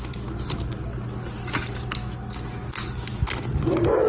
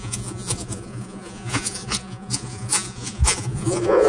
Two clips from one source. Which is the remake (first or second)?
second